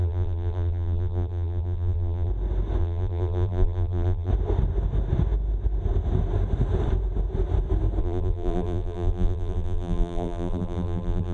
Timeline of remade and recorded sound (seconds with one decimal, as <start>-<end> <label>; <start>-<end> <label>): 0.0-2.3 remade; 2.3-2.8 recorded; 2.8-4.3 remade; 4.3-8.0 recorded; 8.0-11.3 remade